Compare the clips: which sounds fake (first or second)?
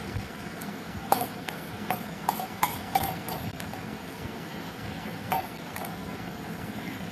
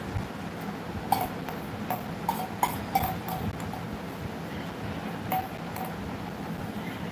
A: first